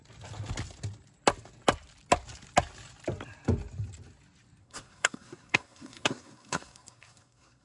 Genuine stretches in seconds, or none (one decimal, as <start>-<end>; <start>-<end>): 0.0-4.6